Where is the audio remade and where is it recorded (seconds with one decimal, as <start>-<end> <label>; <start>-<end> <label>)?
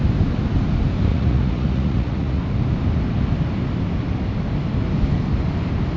0.0-1.1 recorded; 1.1-2.4 remade; 2.4-6.0 recorded